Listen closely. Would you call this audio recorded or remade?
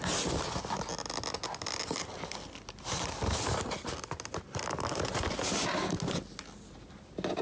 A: recorded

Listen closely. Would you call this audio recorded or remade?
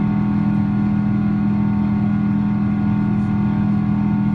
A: recorded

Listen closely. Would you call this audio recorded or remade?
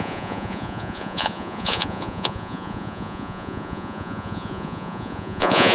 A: remade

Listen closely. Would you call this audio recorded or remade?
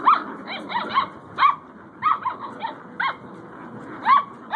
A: recorded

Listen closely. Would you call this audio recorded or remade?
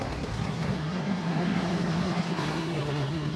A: remade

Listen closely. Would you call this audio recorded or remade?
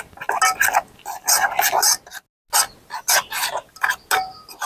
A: recorded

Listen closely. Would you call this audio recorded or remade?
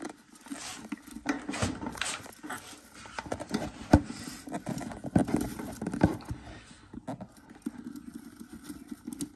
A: recorded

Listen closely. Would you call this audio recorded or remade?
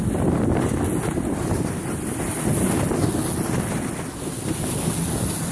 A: recorded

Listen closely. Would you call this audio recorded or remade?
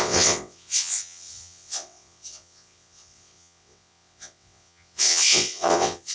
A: remade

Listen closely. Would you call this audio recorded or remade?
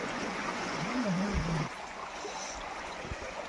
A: remade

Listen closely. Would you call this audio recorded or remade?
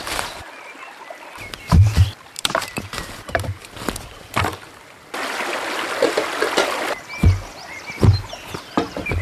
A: recorded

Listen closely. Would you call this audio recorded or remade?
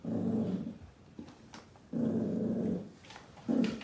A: recorded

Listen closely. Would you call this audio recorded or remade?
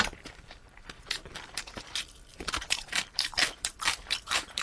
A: remade